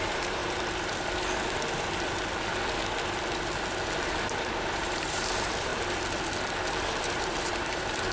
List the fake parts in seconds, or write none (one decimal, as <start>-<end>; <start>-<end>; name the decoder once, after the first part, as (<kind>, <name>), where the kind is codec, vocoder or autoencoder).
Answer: 0.0-0.4 (vocoder, BigVGAN v2); 4.0-5.7; 7.2-8.1